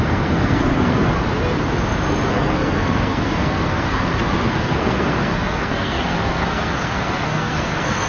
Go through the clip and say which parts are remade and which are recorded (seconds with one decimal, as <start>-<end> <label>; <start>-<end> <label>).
0.0-1.2 remade; 1.2-2.3 recorded; 2.3-8.1 remade

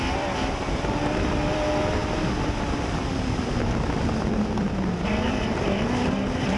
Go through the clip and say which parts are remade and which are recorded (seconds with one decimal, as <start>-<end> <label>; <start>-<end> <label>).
0.0-6.6 recorded

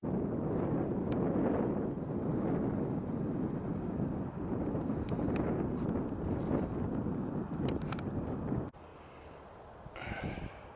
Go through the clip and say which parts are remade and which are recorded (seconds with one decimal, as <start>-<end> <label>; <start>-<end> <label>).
0.0-10.8 recorded

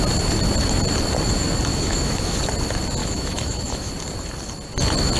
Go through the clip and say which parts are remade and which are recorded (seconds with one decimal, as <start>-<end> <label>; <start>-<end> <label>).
0.0-1.7 recorded; 1.7-2.4 remade; 2.4-3.0 recorded; 3.0-3.9 remade; 3.9-5.2 recorded

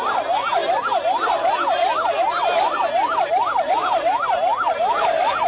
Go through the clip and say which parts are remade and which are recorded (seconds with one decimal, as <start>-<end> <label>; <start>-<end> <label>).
0.0-5.5 recorded

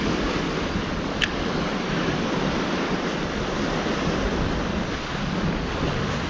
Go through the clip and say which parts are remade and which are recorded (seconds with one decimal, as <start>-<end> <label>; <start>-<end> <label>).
0.0-6.3 recorded

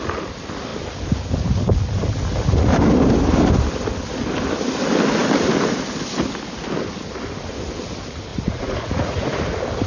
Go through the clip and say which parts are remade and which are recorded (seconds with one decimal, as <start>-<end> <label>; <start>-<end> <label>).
0.0-8.3 recorded; 8.3-9.4 remade; 9.4-9.9 recorded